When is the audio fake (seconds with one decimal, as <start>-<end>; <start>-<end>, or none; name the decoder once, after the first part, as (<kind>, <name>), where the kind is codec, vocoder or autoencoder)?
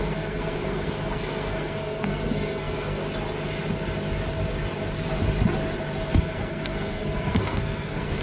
0.0-3.0 (codec, SNAC); 6.1-8.2